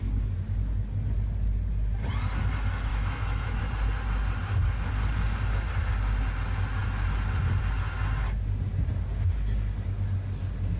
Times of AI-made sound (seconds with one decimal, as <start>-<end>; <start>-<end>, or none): 2.9-3.6